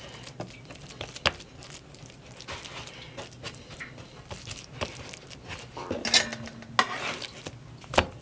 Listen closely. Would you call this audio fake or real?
real